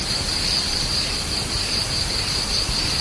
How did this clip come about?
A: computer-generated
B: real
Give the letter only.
A